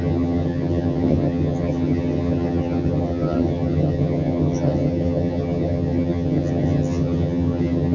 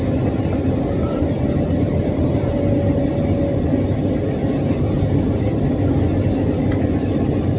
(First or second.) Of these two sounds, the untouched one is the second